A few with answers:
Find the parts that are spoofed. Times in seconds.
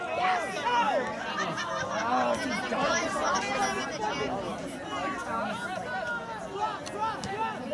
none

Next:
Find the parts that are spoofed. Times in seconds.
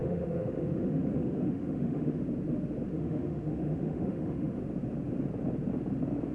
0.0-2.2 (autoencoder, DAC-VAE); 2.9-4.6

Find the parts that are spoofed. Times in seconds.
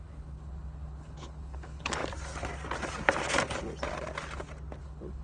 0.0-2.0 (codec, HILCodec); 4.8-5.2